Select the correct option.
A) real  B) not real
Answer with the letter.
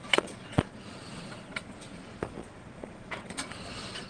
B